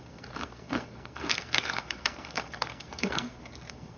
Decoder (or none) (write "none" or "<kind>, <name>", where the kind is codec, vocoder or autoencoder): codec, SNAC